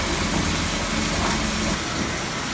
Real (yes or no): yes